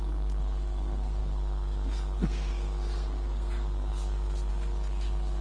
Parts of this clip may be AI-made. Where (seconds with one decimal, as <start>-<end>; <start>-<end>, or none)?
0.0-5.4